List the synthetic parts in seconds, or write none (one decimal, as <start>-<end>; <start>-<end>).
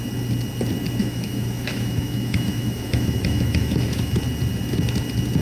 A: 1.0-4.2